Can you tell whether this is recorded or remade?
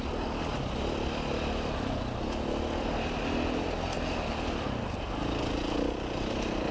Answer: recorded